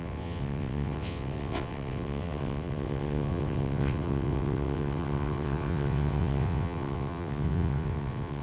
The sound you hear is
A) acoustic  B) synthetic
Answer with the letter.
B